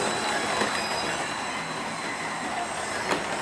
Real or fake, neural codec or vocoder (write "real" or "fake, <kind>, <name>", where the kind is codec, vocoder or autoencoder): real